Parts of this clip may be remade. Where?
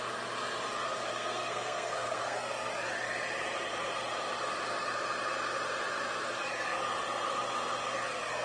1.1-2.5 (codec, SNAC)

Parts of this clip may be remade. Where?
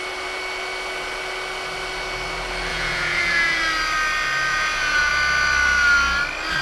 2.7-3.6 (vocoder, Vocos); 4.5-5.1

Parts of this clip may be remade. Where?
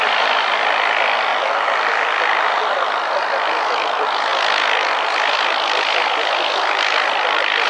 0.0-1.3 (vocoder, BigVGAN v2); 1.9-4.3; 4.9-7.7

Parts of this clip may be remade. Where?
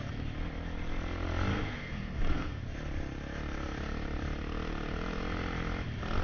1.5-2.6 (codec, SNAC)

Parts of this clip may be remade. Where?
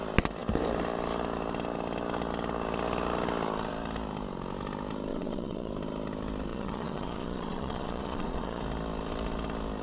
5.1-5.7 (vocoder, Vocos); 6.5-8.6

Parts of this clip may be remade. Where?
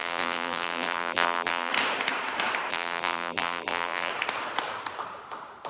0.0-1.7 (vocoder, BigVGAN v2); 2.7-4.1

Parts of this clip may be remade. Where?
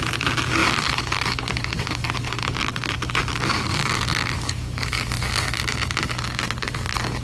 0.0-5.6 (codec, DAC); 6.6-7.2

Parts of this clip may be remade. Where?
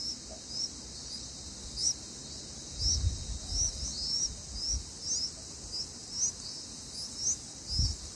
none